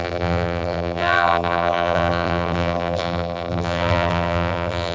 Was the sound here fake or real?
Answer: fake